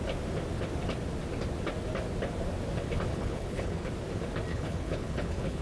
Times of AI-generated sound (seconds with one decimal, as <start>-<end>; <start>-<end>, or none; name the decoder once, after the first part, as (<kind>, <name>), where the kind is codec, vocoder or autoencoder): 3.1-3.9 (codec, HILCodec); 4.5-5.6